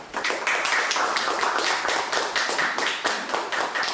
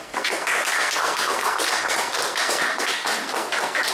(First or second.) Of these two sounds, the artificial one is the second